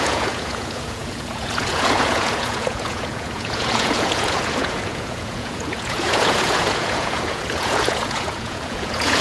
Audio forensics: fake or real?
fake